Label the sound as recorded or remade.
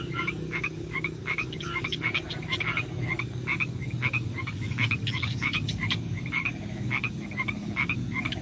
remade